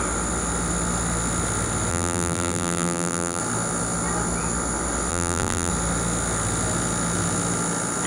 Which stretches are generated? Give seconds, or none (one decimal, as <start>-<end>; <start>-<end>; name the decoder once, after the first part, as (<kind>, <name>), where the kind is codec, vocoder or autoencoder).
1.9-3.4 (vocoder, BigVGAN v2); 5.1-5.7